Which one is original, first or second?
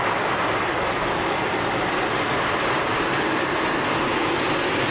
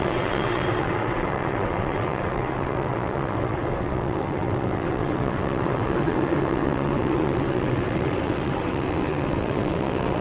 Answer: first